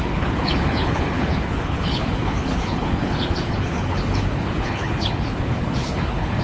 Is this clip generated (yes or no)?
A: yes